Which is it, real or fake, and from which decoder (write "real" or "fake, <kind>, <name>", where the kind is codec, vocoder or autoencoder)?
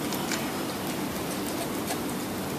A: real